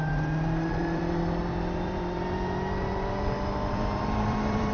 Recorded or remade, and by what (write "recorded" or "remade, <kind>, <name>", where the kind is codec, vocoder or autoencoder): remade, vocoder, BigVGAN v2